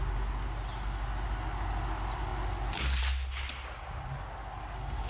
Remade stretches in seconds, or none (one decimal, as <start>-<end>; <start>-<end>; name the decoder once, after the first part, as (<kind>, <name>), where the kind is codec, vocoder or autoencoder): none